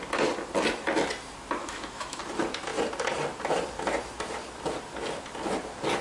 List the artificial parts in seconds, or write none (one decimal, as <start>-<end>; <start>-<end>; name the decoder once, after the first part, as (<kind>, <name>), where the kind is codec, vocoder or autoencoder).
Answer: 1.6-2.2 (autoencoder, DAC-VAE)